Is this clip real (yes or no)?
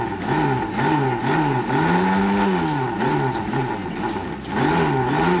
yes